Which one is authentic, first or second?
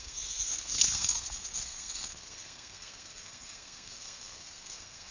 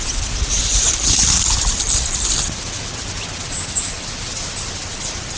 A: second